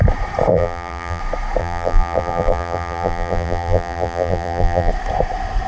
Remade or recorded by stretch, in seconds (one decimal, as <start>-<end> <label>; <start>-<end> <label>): 0.0-0.5 recorded; 0.5-1.2 remade; 1.2-1.6 recorded; 1.6-4.9 remade; 4.9-5.7 recorded